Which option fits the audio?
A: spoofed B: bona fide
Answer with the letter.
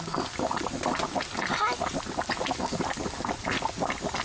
B